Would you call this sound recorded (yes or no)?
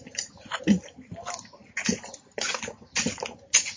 yes